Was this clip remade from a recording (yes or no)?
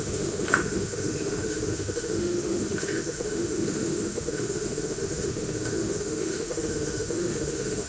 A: yes